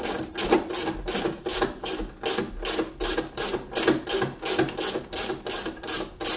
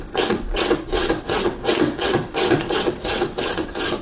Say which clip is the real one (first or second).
first